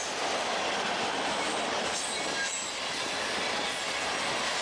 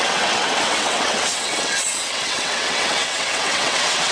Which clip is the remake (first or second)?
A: second